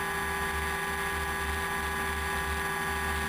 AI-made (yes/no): no